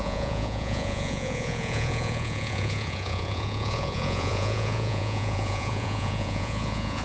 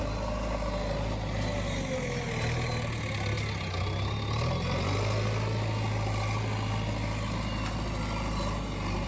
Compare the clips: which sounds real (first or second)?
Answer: second